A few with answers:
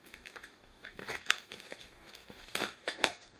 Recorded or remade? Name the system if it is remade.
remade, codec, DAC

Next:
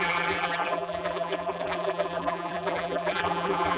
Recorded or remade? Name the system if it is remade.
remade, vocoder, BigVGAN v2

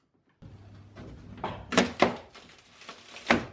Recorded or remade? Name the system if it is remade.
recorded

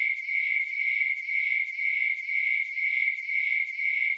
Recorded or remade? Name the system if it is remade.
recorded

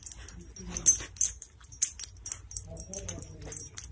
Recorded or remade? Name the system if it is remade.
recorded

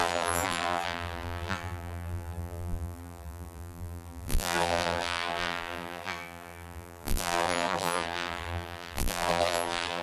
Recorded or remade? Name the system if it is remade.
remade, vocoder, BigVGAN v2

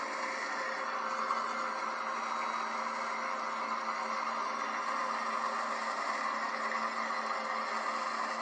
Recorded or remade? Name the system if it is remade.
recorded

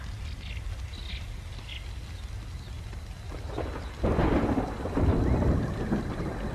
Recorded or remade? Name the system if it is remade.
recorded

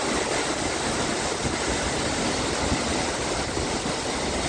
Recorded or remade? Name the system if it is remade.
recorded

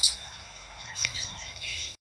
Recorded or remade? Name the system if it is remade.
remade, codec, SNAC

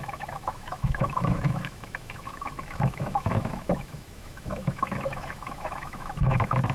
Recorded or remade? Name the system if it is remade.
remade, autoencoder, DAC-VAE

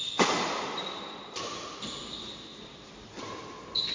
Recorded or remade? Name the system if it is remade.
recorded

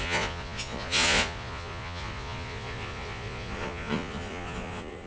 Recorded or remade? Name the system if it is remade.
remade, vocoder, Vocos